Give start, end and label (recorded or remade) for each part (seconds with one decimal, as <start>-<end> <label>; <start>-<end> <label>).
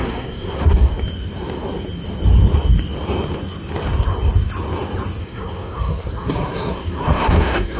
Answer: 0.0-0.9 remade; 0.9-5.2 recorded; 5.2-7.8 remade